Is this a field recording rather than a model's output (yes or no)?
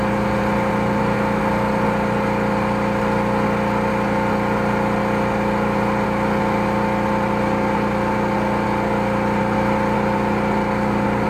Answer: yes